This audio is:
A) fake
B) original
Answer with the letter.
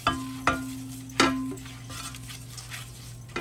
B